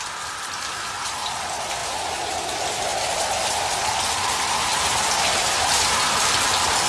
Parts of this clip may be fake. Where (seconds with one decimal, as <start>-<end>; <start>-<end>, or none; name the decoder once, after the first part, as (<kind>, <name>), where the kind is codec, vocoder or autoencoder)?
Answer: 4.7-5.2 (vocoder, BigVGAN v2)